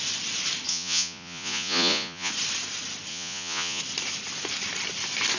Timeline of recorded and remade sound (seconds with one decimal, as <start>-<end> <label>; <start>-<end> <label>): 0.0-0.7 recorded; 0.7-2.3 remade; 2.3-3.1 recorded; 3.1-3.8 remade; 3.8-5.4 recorded